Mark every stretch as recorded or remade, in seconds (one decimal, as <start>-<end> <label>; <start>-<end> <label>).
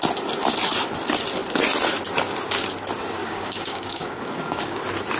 0.0-3.2 recorded; 3.2-4.8 remade; 4.8-5.2 recorded